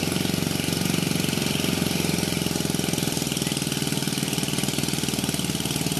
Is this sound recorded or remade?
recorded